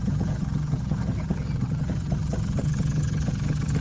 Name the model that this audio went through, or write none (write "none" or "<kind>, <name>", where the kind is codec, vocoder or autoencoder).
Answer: vocoder, HiFi-GAN